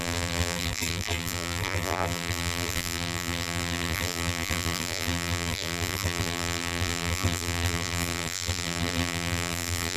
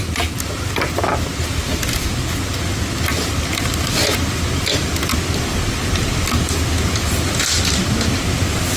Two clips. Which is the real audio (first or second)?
second